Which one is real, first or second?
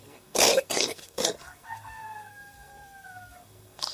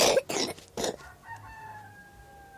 second